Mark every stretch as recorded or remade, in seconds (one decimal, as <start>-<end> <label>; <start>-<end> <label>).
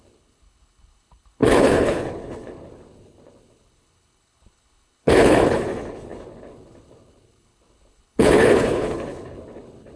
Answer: 0.0-10.0 remade